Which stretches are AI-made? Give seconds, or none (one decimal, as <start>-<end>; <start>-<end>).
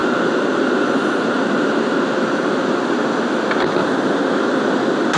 none